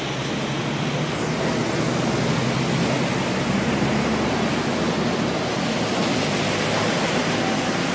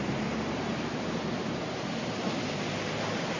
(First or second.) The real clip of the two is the first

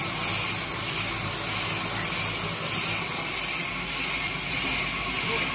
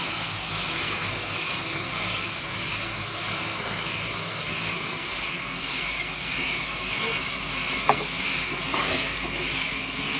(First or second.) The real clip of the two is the first